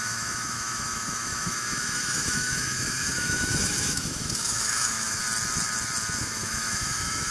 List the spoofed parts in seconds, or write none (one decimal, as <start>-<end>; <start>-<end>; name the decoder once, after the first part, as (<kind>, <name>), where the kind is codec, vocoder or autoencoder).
0.0-5.2 (autoencoder, DAC-VAE); 6.2-7.3